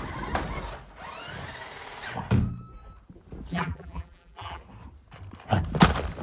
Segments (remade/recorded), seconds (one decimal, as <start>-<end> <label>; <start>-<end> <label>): 0.0-3.5 recorded; 3.5-4.6 remade; 4.6-6.2 recorded